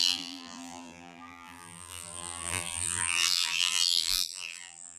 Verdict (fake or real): fake